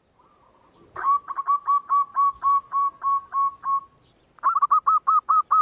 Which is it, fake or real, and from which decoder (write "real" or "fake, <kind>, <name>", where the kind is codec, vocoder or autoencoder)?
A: real